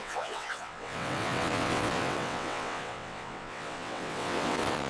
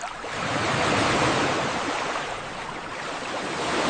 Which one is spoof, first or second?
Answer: first